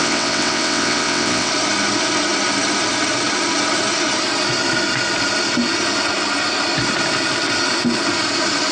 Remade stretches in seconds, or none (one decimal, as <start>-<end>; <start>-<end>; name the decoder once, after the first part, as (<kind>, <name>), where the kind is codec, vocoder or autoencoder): 0.0-1.5 (vocoder, WaveNeXt)